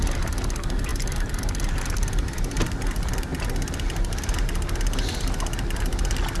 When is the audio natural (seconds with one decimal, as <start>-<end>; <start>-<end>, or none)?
0.0-6.4